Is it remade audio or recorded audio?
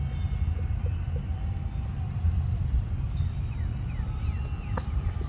recorded